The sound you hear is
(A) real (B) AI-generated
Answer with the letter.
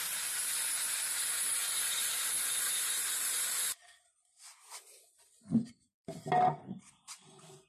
A